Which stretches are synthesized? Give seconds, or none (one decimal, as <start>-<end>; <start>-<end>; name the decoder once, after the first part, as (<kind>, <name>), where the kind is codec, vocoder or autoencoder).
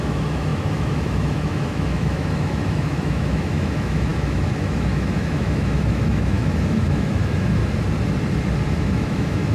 0.0-7.6 (autoencoder, DAC-VAE); 8.7-9.5